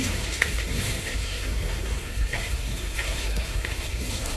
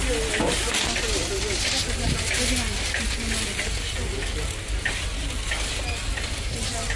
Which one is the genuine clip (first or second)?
second